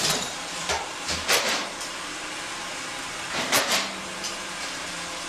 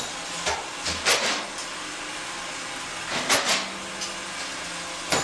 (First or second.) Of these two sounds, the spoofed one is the first